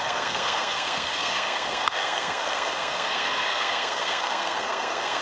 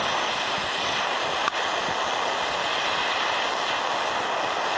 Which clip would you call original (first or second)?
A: second